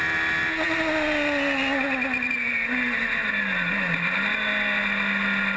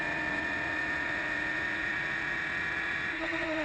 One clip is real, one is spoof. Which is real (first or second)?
first